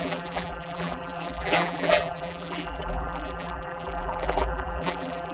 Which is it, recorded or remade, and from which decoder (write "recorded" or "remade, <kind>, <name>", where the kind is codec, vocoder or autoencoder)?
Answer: remade, vocoder, BigVGAN v2